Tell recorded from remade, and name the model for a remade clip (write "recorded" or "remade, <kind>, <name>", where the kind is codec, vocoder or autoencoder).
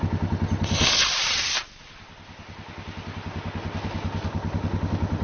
recorded